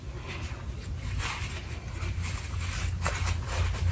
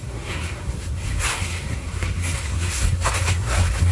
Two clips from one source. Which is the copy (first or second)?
second